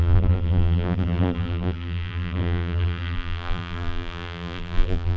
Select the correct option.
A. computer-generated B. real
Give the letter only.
A